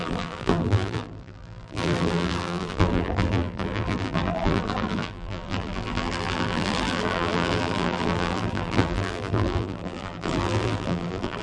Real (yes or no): no